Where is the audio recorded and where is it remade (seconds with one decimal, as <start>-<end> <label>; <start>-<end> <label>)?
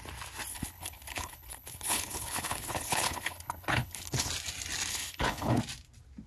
0.0-0.5 recorded; 0.5-4.3 remade; 4.3-4.9 recorded; 4.9-5.6 remade; 5.6-6.3 recorded